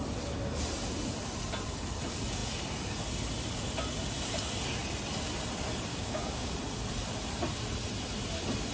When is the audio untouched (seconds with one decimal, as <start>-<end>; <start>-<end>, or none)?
0.0-5.9; 6.5-8.7